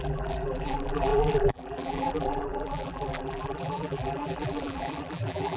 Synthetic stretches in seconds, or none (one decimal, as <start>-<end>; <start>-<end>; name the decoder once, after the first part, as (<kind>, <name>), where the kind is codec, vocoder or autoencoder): 0.0-5.6 (vocoder, BigVGAN v2)